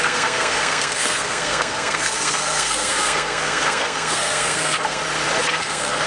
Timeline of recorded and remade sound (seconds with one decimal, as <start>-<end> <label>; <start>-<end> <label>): 0.0-5.0 remade; 5.0-5.5 recorded; 5.5-6.1 remade